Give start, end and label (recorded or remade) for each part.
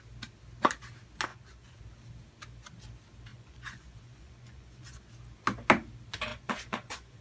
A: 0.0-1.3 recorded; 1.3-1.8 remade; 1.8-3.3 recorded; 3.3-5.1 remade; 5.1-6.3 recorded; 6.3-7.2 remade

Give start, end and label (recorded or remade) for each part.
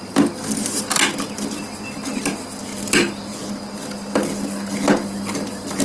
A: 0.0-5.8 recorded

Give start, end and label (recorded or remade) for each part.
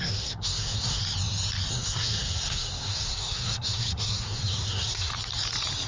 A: 0.0-1.0 remade; 1.0-1.7 recorded; 1.7-5.1 remade; 5.1-5.9 recorded